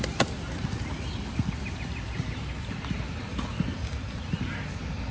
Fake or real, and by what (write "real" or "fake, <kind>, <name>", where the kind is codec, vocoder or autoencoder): real